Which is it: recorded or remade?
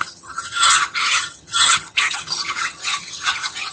remade